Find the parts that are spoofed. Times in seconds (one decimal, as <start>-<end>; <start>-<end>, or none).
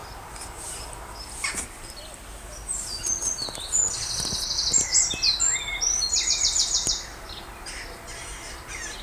none